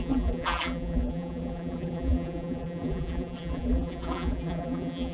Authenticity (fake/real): fake